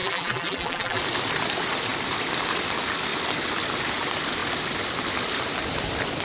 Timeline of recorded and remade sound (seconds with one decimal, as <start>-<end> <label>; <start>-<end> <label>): 0.0-1.0 remade; 1.0-6.2 recorded